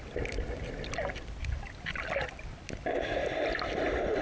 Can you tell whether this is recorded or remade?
recorded